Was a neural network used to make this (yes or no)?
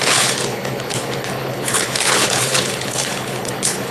yes